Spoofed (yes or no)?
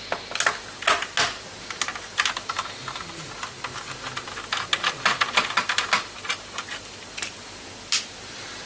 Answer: no